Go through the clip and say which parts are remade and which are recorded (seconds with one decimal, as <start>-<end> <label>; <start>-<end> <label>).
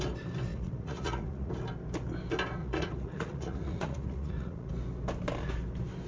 0.0-0.5 recorded; 0.5-1.5 remade; 1.5-2.6 recorded; 2.6-4.7 remade; 4.7-6.1 recorded